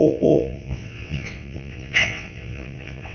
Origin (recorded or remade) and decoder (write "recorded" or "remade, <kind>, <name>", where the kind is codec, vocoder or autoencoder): remade, vocoder, WaveNeXt